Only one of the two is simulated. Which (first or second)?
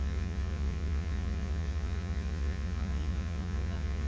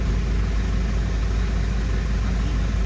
first